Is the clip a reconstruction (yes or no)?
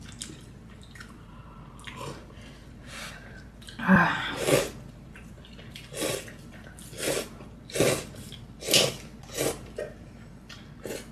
no